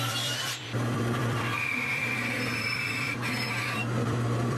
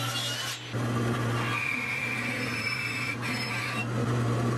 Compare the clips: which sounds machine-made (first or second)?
first